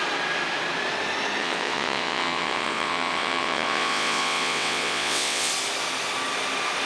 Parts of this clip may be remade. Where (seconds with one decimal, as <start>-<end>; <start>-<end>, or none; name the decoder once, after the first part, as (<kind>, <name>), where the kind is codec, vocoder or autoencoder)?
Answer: 1.4-5.5 (vocoder, WaveNeXt)